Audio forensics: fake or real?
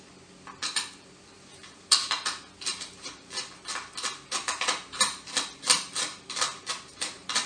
real